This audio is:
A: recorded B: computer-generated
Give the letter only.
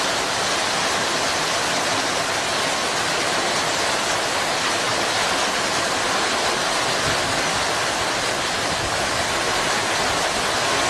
A